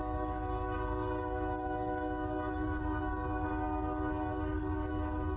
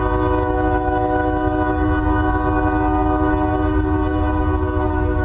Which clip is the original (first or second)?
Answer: second